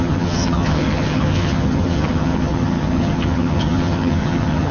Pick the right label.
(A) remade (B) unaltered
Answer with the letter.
A